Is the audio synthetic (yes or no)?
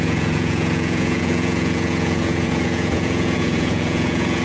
yes